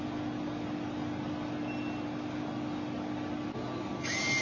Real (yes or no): yes